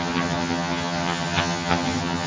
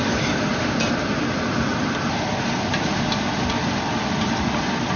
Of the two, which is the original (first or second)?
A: second